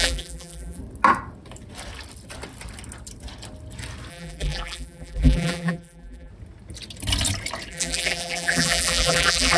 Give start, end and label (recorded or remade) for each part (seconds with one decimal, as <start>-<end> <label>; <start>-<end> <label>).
0.0-0.8 remade; 0.8-4.1 recorded; 4.1-6.3 remade; 6.3-7.7 recorded; 7.7-9.6 remade